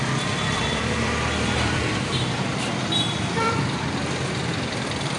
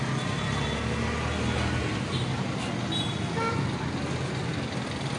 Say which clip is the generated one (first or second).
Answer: first